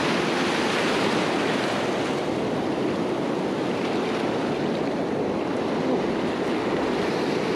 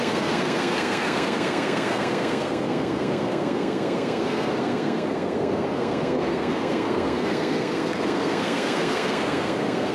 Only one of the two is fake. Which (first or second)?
second